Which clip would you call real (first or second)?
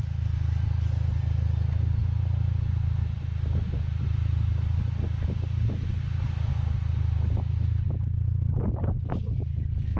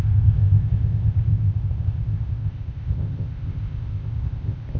first